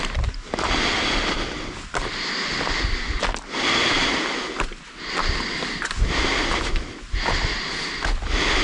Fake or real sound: real